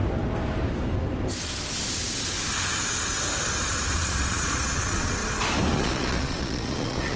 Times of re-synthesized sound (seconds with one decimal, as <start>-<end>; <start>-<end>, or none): 3.9-5.2; 5.7-7.2

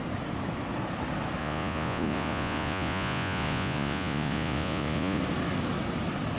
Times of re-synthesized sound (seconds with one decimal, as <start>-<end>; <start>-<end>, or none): 1.4-5.2

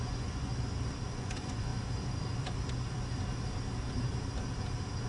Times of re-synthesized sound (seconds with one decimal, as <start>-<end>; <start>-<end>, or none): 0.0-0.5; 1.1-1.7

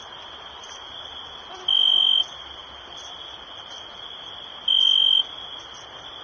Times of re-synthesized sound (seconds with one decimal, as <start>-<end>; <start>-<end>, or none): none

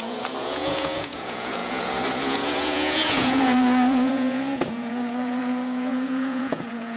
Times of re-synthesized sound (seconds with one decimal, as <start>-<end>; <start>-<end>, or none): 0.0-7.0

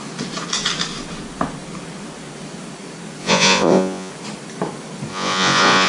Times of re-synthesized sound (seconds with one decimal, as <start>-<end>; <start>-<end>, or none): 3.2-4.1; 5.1-5.9

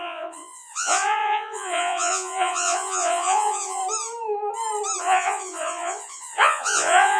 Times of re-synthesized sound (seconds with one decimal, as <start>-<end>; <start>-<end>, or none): 0.0-3.8; 5.0-7.2

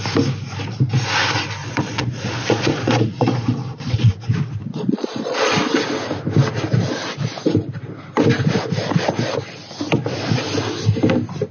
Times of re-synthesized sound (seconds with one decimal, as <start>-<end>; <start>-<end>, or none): 1.6-4.1; 4.6-5.7